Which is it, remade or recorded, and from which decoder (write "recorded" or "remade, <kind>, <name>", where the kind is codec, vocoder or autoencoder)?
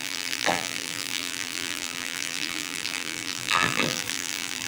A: remade, vocoder, BigVGAN v2